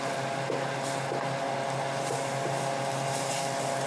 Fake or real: real